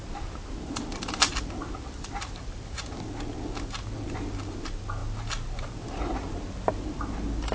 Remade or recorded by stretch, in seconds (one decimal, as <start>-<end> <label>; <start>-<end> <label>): 0.0-7.5 recorded